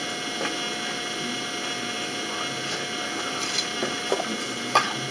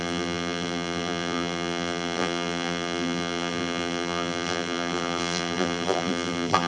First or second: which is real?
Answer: first